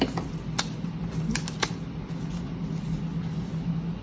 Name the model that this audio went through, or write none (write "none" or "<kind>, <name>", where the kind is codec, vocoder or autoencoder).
none